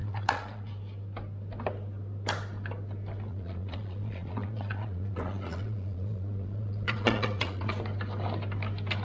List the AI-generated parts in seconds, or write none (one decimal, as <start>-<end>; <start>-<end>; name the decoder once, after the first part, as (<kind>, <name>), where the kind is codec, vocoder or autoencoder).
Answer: 0.0-0.7 (vocoder, Vocos); 3.3-7.7